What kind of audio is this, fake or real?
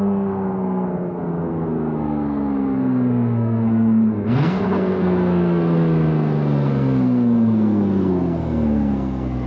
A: fake